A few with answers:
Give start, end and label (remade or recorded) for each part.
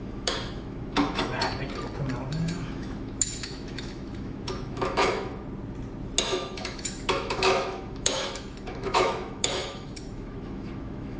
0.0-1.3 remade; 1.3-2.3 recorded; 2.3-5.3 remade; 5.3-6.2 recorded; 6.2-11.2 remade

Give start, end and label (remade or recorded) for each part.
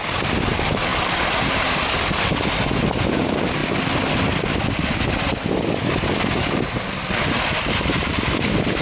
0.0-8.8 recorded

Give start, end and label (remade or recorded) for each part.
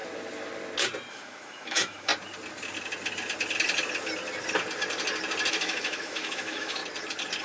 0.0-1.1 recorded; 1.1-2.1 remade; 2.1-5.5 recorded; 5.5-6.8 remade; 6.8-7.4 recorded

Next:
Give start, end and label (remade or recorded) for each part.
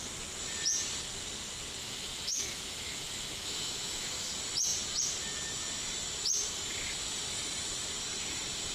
0.0-1.8 recorded; 1.8-4.3 remade; 4.3-8.7 recorded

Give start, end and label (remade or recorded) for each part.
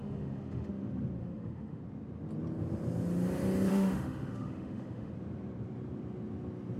0.0-0.7 remade; 0.7-1.2 recorded; 1.2-1.8 remade; 1.8-3.7 recorded; 3.7-5.1 remade; 5.1-6.8 recorded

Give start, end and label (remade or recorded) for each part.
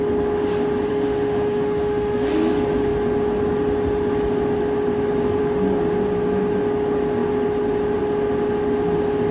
0.0-0.9 recorded; 0.9-2.3 remade; 2.3-9.3 recorded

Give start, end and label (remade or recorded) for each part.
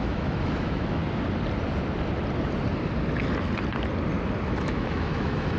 0.0-1.0 remade; 1.0-4.4 recorded; 4.4-5.6 remade